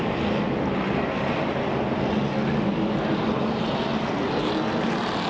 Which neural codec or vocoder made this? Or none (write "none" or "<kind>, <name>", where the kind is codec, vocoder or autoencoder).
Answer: none